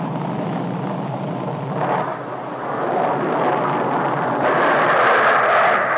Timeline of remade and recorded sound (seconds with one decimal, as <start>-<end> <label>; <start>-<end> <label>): 0.0-6.0 recorded